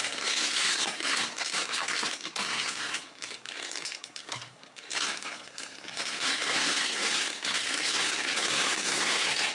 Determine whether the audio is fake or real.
fake